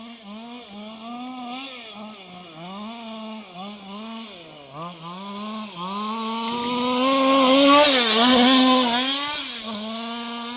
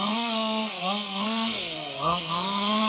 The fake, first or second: second